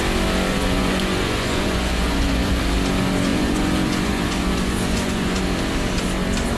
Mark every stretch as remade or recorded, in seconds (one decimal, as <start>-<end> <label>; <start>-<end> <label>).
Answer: 0.0-0.5 recorded; 0.5-2.6 remade; 2.6-3.3 recorded; 3.3-5.4 remade; 5.4-6.6 recorded